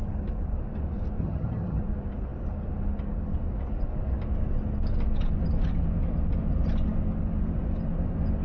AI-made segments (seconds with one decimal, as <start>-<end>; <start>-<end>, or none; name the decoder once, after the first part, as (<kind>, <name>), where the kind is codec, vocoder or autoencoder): 1.2-1.8 (vocoder, HiFi-GAN)